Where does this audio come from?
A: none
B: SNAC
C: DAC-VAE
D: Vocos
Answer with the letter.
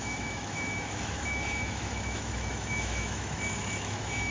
C